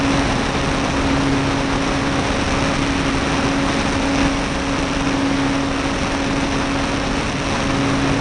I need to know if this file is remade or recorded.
recorded